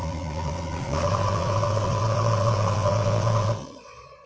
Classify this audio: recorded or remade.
remade